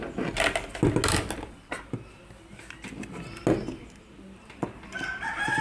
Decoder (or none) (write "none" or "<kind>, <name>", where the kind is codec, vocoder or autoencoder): none